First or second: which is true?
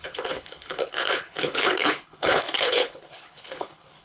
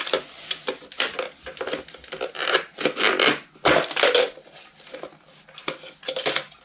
second